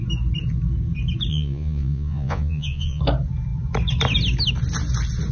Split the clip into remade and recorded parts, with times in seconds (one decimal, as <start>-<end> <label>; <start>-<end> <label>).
0.0-1.3 recorded; 1.3-3.0 remade; 3.0-5.3 recorded